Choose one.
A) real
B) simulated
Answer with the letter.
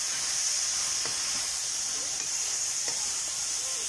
B